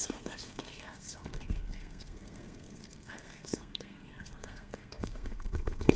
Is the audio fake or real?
fake